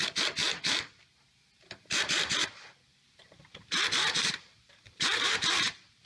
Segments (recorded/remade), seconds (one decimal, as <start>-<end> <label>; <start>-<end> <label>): 0.0-2.9 recorded; 2.9-6.1 remade